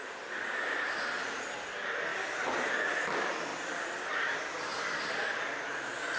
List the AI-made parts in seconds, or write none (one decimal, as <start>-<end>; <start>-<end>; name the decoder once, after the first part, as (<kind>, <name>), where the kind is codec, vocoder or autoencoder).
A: 0.0-2.1 (vocoder, BigVGAN v2); 2.8-4.7; 5.3-6.2